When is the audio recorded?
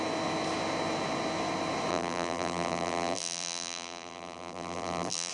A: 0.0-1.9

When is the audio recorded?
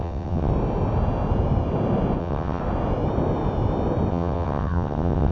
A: 0.5-2.2; 2.6-4.1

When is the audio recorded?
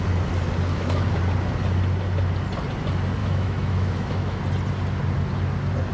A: 0.0-0.7; 1.2-3.2; 4.4-5.9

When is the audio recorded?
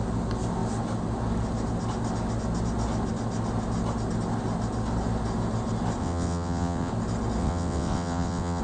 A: 0.0-6.0; 6.9-7.4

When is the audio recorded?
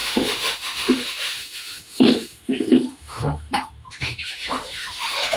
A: none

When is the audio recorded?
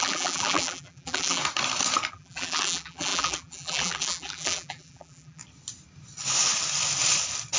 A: 1.4-2.1; 5.4-7.6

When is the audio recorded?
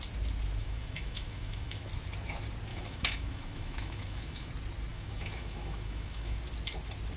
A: 0.0-0.6; 1.9-2.7; 4.5-4.9; 6.4-7.2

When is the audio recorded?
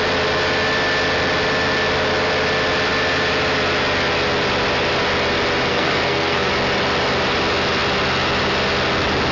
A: 0.0-5.7; 6.5-9.3